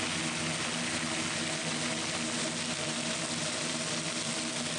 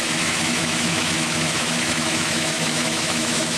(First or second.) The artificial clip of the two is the second